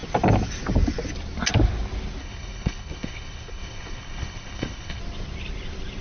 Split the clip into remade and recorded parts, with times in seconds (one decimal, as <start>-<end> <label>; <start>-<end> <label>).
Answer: 0.0-2.2 recorded; 2.2-5.0 remade; 5.0-6.0 recorded